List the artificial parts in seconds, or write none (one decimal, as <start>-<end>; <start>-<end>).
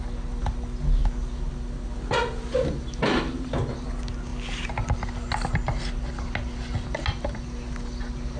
none